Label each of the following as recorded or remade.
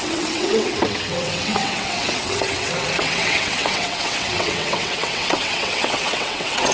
remade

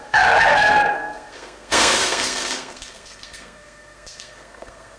remade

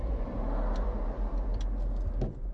recorded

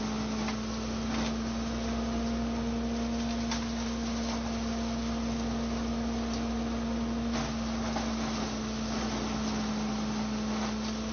recorded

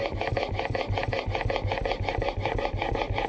recorded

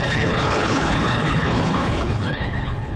remade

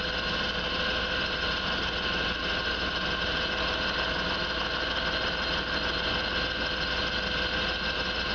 recorded